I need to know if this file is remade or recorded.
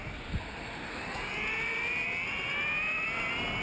recorded